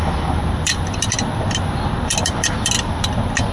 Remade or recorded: recorded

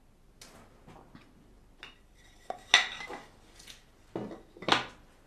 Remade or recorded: recorded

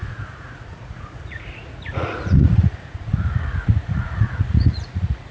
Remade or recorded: remade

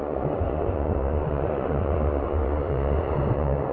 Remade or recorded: remade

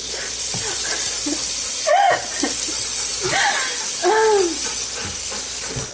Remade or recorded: recorded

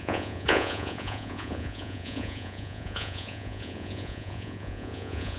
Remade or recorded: remade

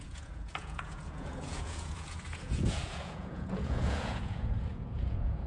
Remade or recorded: remade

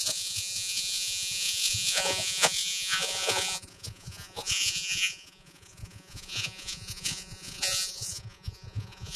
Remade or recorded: remade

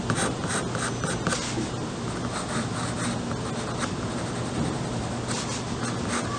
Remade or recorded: recorded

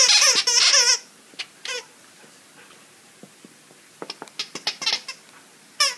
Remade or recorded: recorded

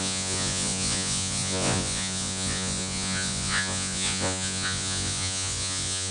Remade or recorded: remade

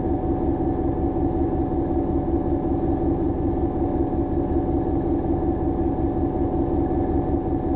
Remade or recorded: recorded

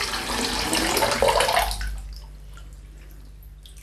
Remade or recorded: recorded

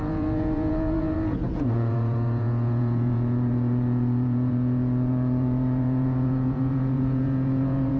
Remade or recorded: remade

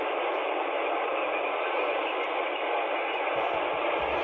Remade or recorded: recorded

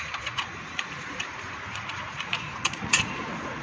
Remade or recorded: remade